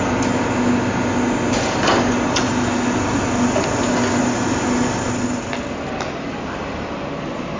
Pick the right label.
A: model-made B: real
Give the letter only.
B